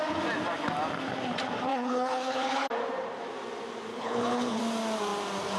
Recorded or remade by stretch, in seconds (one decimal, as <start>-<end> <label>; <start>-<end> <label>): 0.0-1.7 recorded; 1.7-2.7 remade; 2.7-3.9 recorded; 3.9-4.6 remade; 4.6-5.6 recorded